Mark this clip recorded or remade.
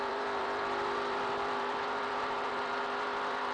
remade